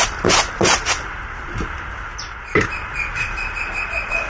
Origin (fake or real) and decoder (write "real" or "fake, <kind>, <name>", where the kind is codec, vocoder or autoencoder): real